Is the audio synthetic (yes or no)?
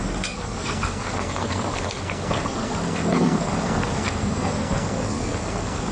yes